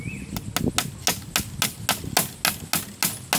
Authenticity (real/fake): real